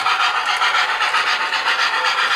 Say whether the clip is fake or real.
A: real